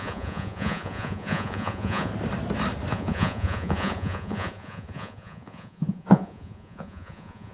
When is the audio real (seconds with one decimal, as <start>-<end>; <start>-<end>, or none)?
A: 2.1-2.9